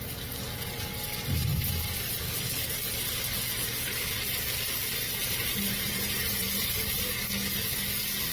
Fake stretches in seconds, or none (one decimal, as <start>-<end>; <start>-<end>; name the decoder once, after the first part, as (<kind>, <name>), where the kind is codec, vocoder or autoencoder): 5.2-7.0 (vocoder, BigVGAN v2)